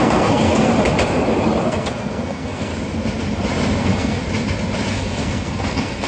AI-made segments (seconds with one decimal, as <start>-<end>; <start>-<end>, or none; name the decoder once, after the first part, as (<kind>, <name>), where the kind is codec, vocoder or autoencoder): 0.0-0.7 (codec, SNAC); 1.6-2.7; 3.8-4.2; 4.9-6.1